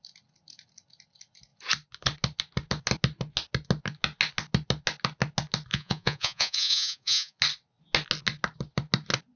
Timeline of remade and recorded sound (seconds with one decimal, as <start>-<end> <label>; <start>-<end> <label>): 0.0-5.7 recorded; 5.7-7.4 remade; 7.4-9.4 recorded